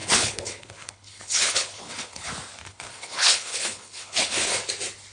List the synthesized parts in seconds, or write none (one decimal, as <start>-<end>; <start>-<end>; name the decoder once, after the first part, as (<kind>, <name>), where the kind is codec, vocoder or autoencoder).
0.0-2.3 (codec, HILCodec); 2.7-4.6